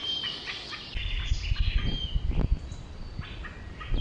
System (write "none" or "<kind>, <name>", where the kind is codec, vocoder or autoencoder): none